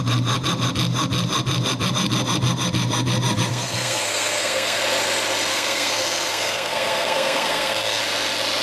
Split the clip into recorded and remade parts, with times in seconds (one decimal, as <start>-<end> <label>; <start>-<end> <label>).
0.0-3.5 recorded; 3.5-4.8 remade; 4.8-5.5 recorded; 5.5-8.0 remade; 8.0-8.6 recorded